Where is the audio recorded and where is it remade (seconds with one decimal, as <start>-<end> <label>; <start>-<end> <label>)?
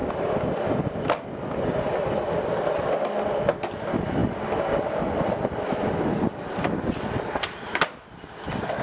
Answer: 0.0-8.8 recorded